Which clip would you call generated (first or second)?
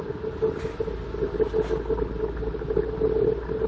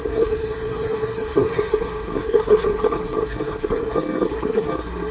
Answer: second